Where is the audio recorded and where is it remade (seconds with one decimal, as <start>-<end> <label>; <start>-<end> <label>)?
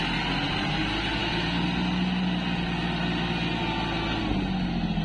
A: 0.0-5.0 recorded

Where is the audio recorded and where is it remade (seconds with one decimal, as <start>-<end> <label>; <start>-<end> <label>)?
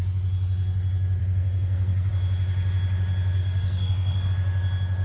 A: 0.0-1.2 recorded; 1.2-2.1 remade; 2.1-3.4 recorded; 3.4-4.3 remade; 4.3-5.0 recorded